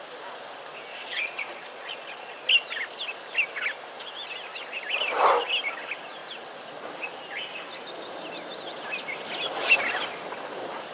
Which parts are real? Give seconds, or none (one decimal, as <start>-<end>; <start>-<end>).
0.0-0.9; 2.4-10.9